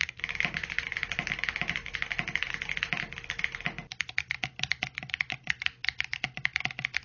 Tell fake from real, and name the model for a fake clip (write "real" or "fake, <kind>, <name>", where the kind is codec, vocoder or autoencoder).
real